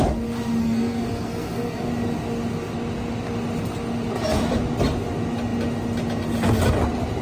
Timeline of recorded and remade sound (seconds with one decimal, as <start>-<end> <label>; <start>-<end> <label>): 0.0-0.6 recorded; 0.6-1.9 remade; 1.9-7.2 recorded